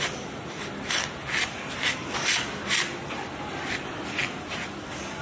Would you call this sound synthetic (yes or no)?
no